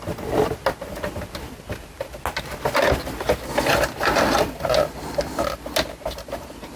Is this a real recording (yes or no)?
yes